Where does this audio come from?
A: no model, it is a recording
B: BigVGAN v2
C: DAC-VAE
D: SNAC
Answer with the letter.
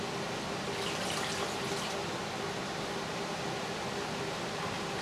A